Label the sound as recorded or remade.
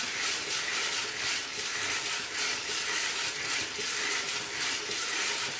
recorded